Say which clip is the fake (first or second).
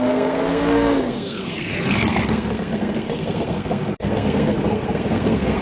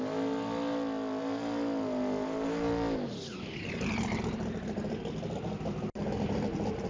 first